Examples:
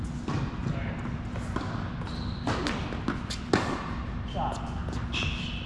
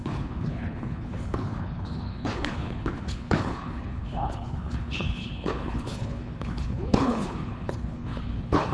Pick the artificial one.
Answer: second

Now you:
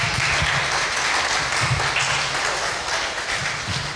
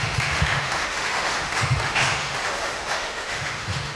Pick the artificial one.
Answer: second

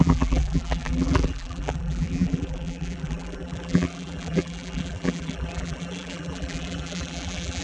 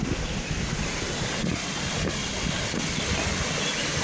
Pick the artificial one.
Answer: first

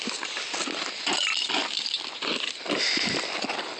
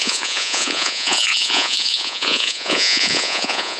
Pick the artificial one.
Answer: second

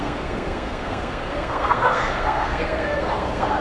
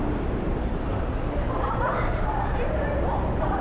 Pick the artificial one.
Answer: first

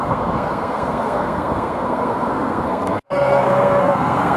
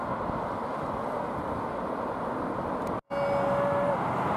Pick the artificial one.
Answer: first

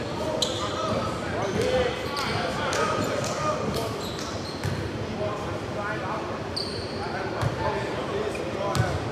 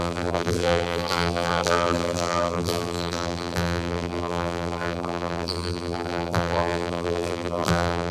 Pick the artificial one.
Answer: second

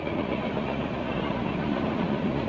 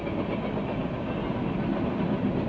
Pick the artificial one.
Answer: first